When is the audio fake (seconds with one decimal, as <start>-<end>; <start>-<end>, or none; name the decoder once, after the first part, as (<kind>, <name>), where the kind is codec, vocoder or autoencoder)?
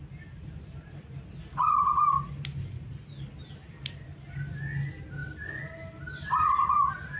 5.2-7.2 (vocoder, BigVGAN v2)